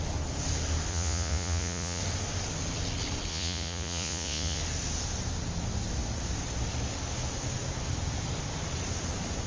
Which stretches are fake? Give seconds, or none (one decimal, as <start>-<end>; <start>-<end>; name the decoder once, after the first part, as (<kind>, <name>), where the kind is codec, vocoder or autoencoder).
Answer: 0.9-2.0 (vocoder, Vocos); 3.3-4.6